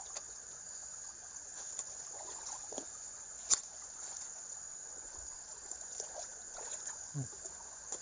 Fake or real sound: fake